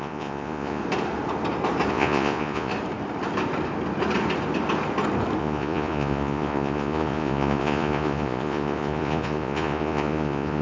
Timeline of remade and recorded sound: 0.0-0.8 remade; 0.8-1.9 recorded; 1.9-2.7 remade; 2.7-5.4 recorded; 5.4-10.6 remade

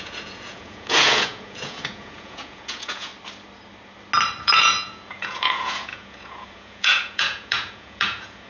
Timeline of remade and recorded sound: 0.0-3.1 remade; 3.1-4.4 recorded; 4.4-8.5 remade

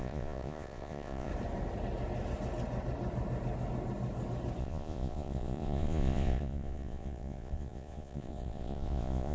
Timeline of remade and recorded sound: 0.0-1.3 remade; 1.3-4.6 recorded; 4.6-9.3 remade

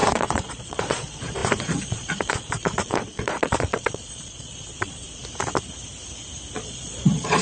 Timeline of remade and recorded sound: 0.0-5.2 remade; 5.2-6.5 recorded; 6.5-7.4 remade

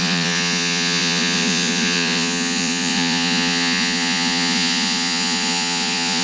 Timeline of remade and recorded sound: 0.0-6.2 remade

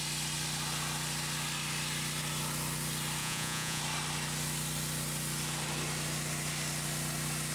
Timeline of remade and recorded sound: 0.0-3.2 recorded; 3.2-3.8 remade; 3.8-7.5 recorded

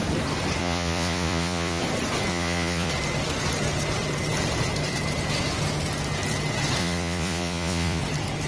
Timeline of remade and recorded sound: 0.0-0.6 recorded; 0.6-1.8 remade; 1.8-2.3 recorded; 2.3-2.9 remade; 2.9-6.8 recorded; 6.8-8.0 remade; 8.0-8.5 recorded

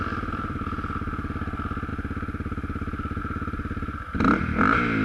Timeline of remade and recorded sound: 0.0-5.0 recorded